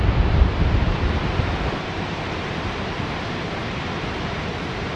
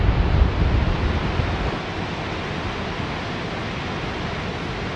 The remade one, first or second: first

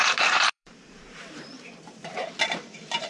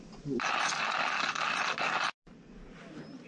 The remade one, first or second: first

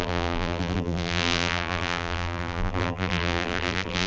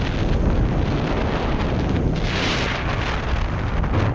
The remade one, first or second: first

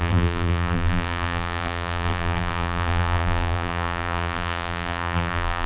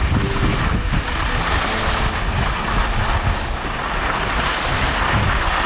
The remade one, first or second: first